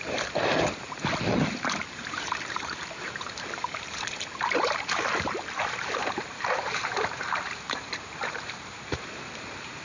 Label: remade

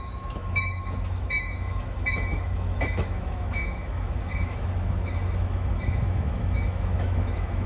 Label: remade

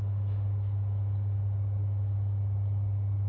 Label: recorded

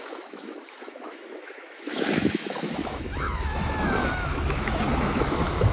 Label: remade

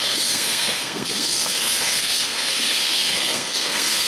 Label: remade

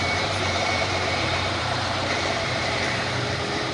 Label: remade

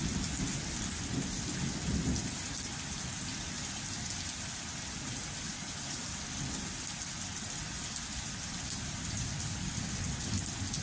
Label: recorded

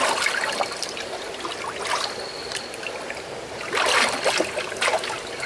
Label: recorded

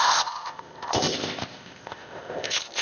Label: remade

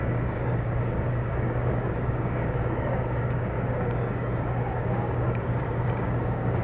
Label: remade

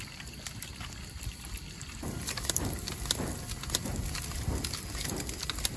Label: recorded